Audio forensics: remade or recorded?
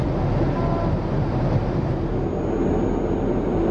recorded